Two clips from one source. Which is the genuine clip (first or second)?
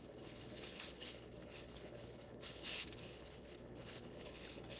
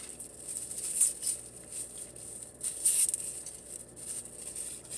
second